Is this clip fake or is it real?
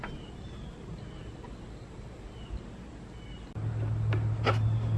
real